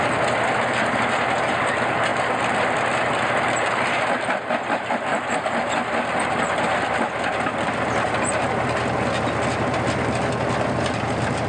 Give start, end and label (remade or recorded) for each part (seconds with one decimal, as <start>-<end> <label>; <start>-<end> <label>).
0.0-11.5 recorded